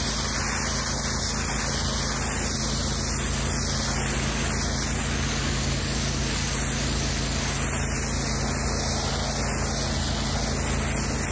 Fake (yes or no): no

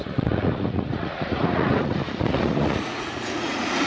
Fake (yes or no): yes